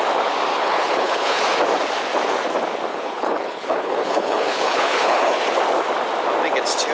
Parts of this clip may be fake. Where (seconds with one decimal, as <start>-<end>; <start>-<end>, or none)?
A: 0.5-1.4; 2.9-5.4